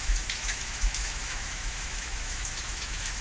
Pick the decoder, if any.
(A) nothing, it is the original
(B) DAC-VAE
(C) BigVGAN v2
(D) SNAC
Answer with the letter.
B